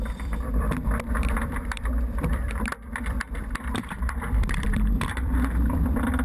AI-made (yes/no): yes